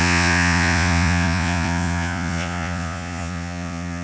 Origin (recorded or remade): remade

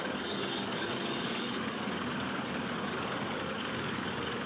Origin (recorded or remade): remade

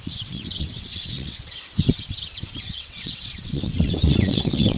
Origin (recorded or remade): remade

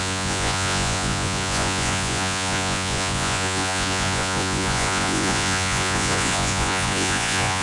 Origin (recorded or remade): remade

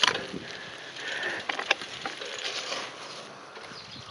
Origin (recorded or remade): recorded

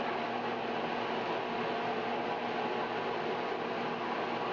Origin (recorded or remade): recorded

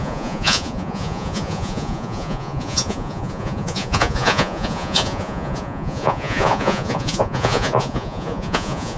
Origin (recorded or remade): remade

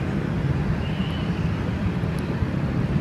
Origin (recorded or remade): recorded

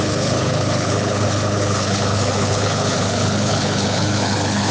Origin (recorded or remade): remade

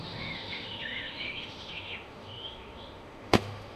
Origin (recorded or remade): remade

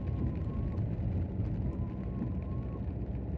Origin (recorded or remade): recorded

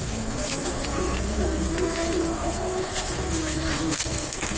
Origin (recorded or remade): remade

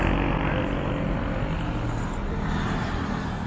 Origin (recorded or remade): recorded